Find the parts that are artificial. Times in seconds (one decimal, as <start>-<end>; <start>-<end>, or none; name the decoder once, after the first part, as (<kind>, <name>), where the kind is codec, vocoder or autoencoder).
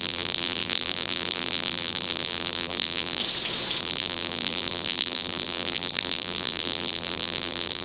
0.0-3.2 (vocoder, BigVGAN v2); 3.8-7.8